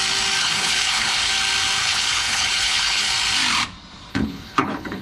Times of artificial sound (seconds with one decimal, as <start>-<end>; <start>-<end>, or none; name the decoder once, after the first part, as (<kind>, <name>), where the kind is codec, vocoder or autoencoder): 0.4-1.3 (codec, HILCodec); 1.8-3.1; 4.1-5.0

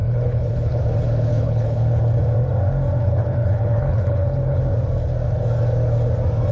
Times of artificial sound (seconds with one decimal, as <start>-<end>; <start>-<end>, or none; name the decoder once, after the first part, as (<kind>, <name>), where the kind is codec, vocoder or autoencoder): 0.0-0.8 (codec, HILCodec); 1.3-2.0; 3.0-4.6

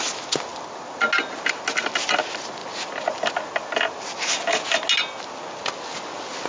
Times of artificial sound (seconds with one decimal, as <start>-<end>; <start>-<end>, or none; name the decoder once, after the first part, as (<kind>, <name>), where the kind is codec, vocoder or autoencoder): none

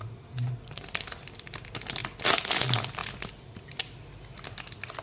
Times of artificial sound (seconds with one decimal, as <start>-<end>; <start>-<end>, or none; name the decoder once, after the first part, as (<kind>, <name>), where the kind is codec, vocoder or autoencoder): none